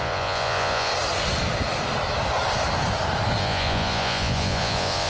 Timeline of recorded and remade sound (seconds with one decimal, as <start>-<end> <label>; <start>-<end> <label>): 0.0-0.9 remade; 0.9-3.4 recorded; 3.4-5.1 remade